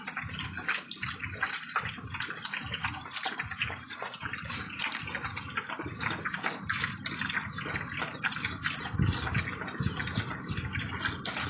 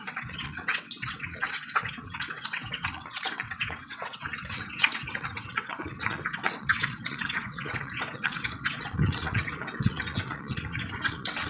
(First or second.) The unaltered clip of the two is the first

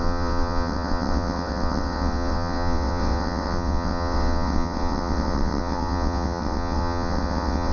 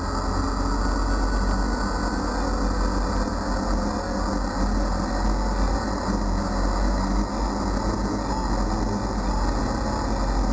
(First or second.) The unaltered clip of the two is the second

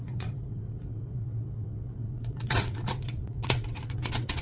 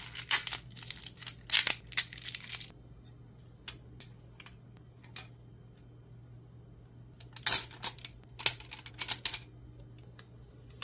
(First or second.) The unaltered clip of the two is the second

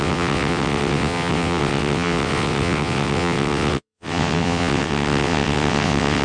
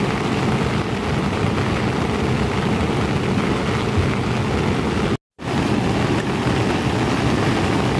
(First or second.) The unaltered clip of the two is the second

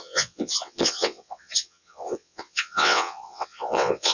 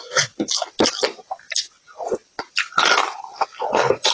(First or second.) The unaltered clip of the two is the second